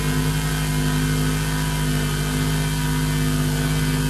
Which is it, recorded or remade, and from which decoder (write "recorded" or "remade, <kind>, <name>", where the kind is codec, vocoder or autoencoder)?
recorded